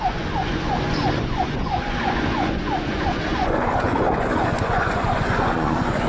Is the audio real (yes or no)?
no